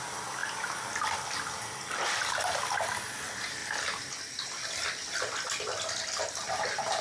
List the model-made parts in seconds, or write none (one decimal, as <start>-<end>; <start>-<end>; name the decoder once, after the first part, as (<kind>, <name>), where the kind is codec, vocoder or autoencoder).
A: none

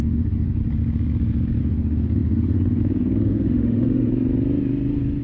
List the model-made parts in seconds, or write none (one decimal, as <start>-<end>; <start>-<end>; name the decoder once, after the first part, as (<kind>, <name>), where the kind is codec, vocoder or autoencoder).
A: 0.0-0.6 (autoencoder, DAC-VAE); 1.6-4.1

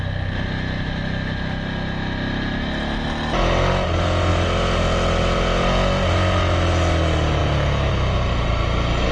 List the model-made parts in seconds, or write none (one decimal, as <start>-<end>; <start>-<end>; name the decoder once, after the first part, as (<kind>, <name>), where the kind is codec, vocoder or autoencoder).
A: none